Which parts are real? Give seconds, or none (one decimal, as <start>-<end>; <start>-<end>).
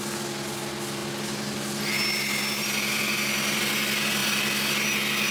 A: 0.0-5.3